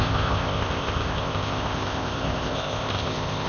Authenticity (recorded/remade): remade